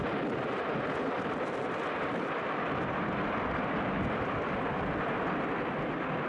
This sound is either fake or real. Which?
fake